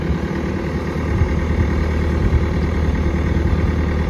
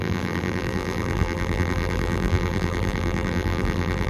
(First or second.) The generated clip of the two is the second